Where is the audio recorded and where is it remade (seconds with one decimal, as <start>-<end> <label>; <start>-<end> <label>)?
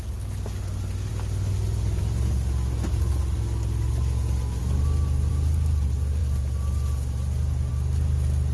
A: 0.0-8.5 recorded